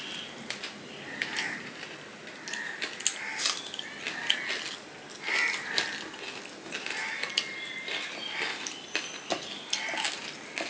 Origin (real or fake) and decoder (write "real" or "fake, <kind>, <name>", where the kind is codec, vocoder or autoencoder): real